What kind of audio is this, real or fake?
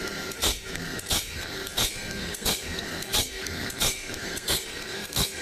fake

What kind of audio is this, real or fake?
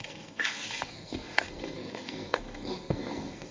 fake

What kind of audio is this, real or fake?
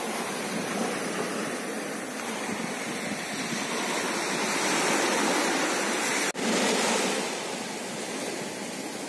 real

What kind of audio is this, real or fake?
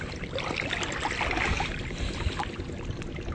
real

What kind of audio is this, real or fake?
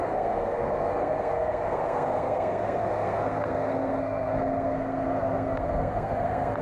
fake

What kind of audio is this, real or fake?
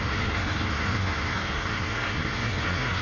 fake